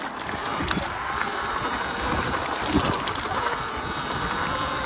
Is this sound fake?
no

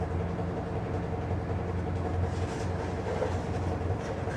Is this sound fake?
no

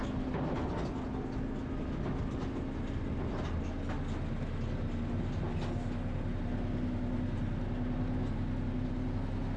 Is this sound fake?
no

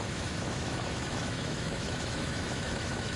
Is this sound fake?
yes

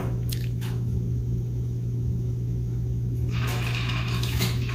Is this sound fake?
yes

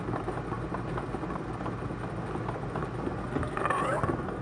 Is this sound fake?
no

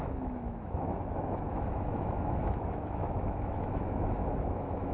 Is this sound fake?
yes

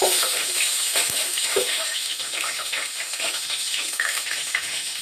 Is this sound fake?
yes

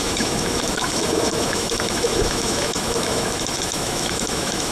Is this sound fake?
yes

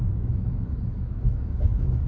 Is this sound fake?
yes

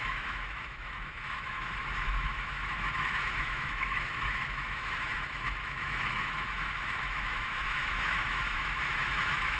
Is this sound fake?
yes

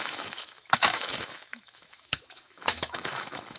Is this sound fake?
yes